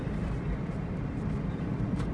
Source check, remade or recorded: remade